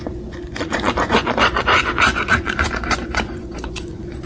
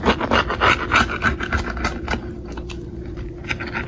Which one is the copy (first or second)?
first